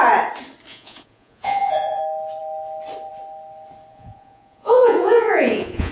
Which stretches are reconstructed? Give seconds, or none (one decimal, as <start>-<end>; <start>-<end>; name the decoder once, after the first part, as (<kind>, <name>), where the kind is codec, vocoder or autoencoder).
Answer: 0.7-2.0 (vocoder, Vocos); 3.9-5.9

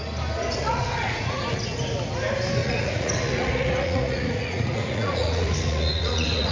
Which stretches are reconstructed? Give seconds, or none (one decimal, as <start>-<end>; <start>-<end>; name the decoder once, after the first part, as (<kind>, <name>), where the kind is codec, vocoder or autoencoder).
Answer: 0.6-1.4 (vocoder, Vocos); 2.6-6.5

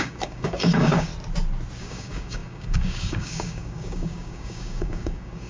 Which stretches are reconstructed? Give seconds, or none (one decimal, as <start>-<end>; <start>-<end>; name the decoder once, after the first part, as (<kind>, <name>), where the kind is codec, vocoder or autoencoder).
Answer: 0.0-1.1 (codec, DAC); 1.8-5.5

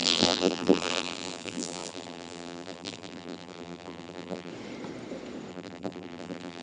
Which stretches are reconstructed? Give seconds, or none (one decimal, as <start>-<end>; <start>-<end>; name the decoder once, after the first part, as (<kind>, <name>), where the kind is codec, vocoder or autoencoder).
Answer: 0.0-4.5 (vocoder, BigVGAN v2); 5.5-6.6

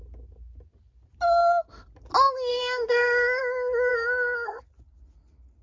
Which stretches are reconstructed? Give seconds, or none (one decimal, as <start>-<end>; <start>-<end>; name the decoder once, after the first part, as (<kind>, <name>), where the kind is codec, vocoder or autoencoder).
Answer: 2.5-3.4 (codec, SNAC); 3.9-4.6

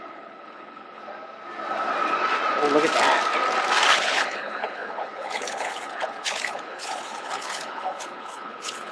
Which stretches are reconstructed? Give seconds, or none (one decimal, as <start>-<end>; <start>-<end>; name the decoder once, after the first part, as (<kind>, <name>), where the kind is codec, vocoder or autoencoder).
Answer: 0.0-1.0 (codec, HILCodec); 3.9-8.9

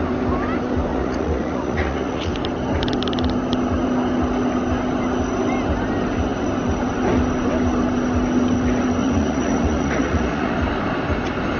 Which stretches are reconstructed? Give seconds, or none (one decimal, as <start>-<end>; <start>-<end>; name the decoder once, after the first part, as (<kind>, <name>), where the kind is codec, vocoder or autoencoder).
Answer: 0.9-2.3 (vocoder, Vocos); 9.0-10.5

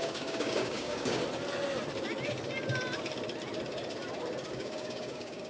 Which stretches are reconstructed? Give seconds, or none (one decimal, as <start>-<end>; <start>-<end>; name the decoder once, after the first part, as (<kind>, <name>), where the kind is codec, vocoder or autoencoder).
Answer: 0.0-1.2 (codec, DAC); 4.5-5.5